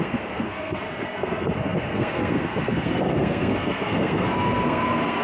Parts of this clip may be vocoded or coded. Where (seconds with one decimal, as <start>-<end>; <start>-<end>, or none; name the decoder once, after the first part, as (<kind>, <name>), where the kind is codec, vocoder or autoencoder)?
0.0-5.2 (codec, SNAC)